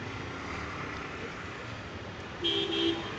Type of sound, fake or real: real